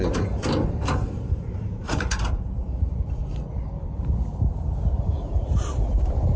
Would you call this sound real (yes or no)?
no